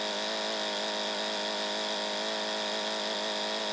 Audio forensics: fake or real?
real